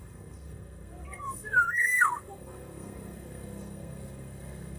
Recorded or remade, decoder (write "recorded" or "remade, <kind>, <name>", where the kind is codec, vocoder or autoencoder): remade, codec, SNAC